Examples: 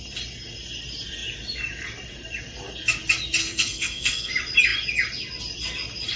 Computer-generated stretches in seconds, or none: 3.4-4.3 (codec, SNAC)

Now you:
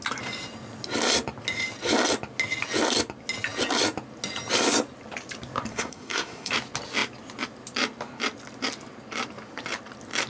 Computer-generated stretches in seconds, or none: 5.7-6.5 (codec, SNAC)

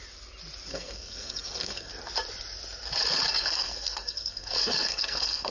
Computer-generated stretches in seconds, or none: 0.7-1.9 (codec, SNAC); 3.4-5.5